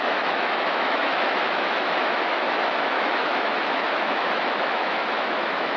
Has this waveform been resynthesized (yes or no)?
yes